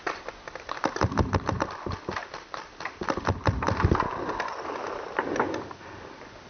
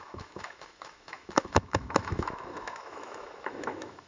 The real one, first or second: first